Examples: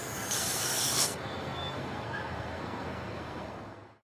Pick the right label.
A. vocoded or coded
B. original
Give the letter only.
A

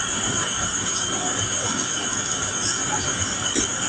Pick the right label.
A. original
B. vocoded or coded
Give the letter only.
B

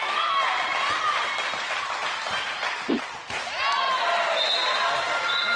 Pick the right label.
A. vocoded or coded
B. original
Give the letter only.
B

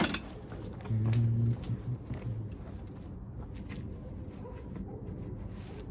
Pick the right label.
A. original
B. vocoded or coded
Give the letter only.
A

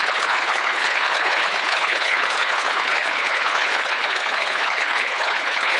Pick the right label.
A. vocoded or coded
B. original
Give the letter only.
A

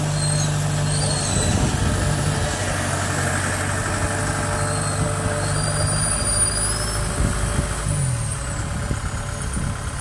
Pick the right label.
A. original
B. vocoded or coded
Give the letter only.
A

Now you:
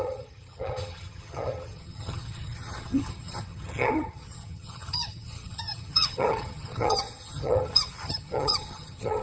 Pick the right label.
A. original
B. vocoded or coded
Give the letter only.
B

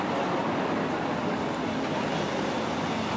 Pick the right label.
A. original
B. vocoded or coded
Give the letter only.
A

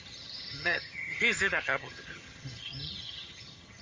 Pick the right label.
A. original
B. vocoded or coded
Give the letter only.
B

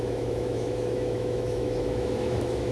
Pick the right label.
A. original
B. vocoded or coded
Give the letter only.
B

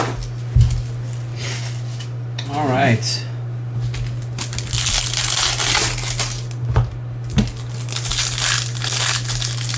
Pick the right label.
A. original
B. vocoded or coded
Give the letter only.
A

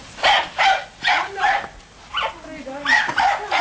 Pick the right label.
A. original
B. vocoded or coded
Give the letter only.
A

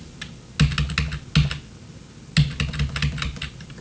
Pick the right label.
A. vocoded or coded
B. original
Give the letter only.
B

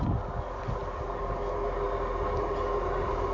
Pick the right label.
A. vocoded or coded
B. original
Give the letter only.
B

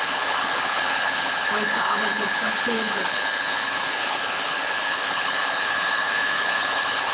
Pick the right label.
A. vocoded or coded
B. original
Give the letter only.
A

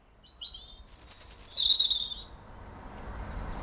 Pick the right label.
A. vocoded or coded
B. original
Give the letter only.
B